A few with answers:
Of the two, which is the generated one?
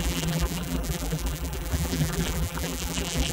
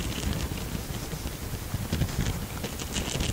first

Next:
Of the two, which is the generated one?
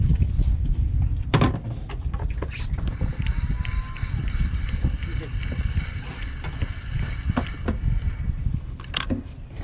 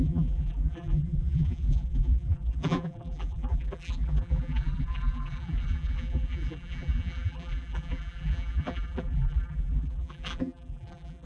second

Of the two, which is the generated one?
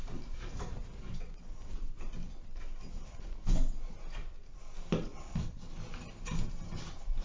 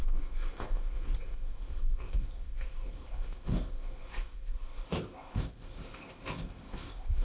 second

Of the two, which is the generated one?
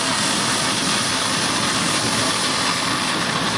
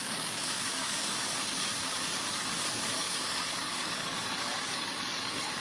second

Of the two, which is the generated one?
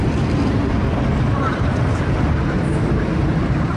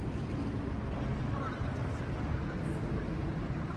first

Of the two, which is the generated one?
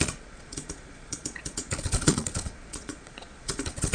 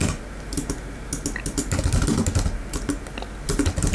first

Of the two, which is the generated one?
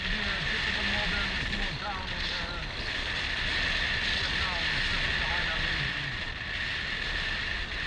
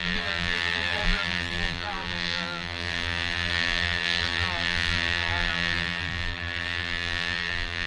second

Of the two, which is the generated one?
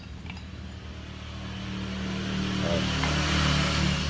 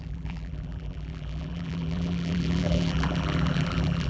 second